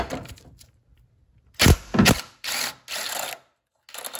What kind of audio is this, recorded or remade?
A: recorded